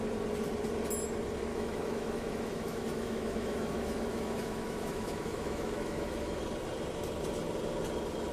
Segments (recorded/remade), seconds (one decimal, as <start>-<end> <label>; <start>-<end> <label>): 0.0-1.5 recorded; 1.5-6.4 remade; 6.4-8.3 recorded